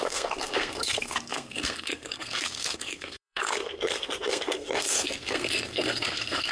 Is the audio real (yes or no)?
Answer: no